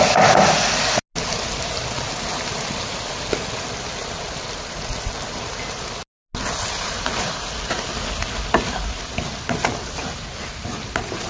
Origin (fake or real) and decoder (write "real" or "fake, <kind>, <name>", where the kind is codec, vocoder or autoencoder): real